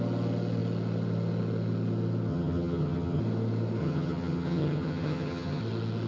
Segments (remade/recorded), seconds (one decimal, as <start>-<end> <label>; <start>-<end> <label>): 0.0-2.3 recorded; 2.3-3.2 remade; 3.2-3.8 recorded; 3.8-5.6 remade; 5.6-6.1 recorded